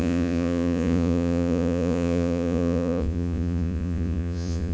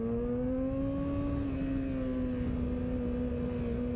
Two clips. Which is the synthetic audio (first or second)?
first